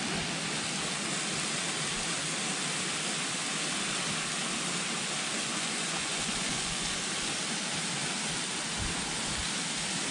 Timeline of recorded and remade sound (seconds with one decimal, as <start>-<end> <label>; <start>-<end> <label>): 0.0-5.4 recorded; 5.4-7.0 remade; 7.0-10.1 recorded